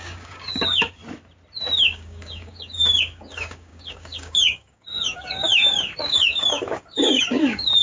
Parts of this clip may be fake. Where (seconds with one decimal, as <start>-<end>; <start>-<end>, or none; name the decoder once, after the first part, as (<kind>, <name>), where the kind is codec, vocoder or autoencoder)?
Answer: 0.0-1.0 (codec, DAC); 1.8-7.8